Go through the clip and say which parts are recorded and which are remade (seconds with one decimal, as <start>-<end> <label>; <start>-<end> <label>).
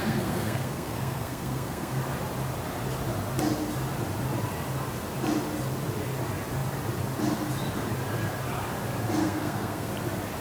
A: 0.0-2.0 remade; 2.0-9.2 recorded; 9.2-9.9 remade; 9.9-10.4 recorded